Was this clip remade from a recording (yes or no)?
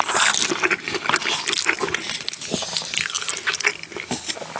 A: no